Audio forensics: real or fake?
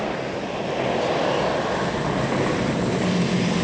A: real